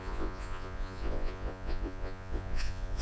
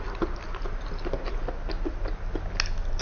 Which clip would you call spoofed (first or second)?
first